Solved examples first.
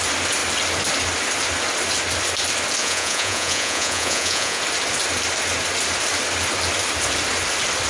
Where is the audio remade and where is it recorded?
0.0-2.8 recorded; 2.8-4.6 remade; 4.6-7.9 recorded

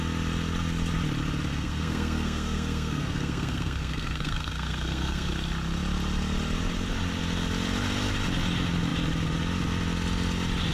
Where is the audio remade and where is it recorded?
0.0-1.5 recorded; 1.5-5.3 remade; 5.3-10.7 recorded

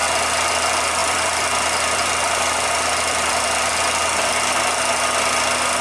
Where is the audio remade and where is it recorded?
0.0-1.0 recorded; 1.0-4.5 remade; 4.5-5.8 recorded

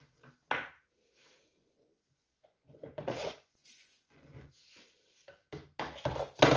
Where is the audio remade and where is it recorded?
0.0-1.6 recorded; 1.6-4.5 remade; 4.5-6.6 recorded

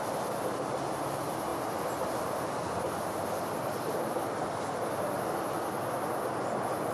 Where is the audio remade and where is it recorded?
0.0-6.9 recorded